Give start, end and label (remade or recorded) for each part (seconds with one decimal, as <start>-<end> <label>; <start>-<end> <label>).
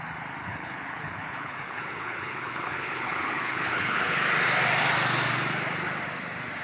0.0-0.4 recorded; 0.4-4.2 remade; 4.2-6.6 recorded